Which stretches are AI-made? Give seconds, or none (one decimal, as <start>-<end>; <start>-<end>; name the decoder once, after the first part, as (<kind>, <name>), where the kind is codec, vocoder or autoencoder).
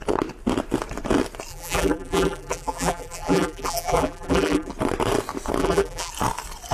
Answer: 1.5-4.7 (vocoder, BigVGAN v2); 5.6-6.1